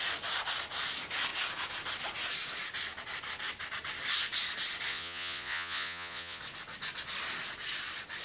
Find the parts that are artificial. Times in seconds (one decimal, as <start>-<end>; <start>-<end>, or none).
4.9-6.4